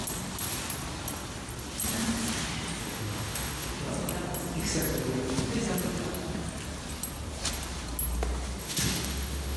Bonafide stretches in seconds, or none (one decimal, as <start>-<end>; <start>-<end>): 0.0-2.8; 3.7-8.6

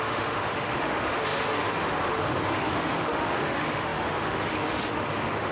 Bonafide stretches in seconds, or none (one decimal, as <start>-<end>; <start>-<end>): none

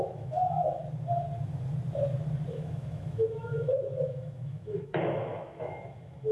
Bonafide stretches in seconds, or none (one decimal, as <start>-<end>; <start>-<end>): 0.8-2.5